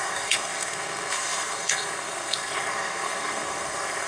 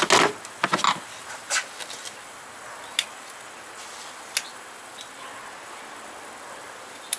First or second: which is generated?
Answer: first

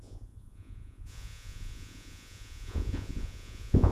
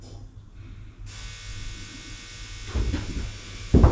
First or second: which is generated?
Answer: first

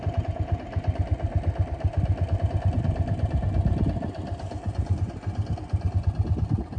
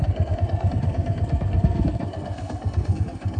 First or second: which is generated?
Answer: second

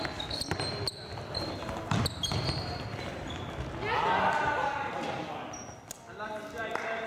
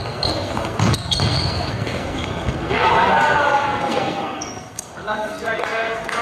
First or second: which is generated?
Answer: second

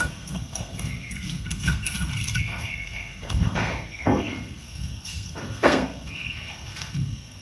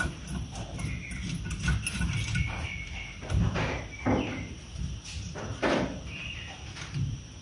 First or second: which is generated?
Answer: first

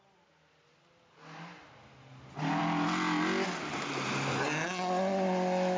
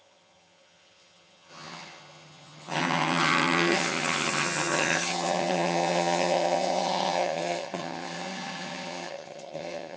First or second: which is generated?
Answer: second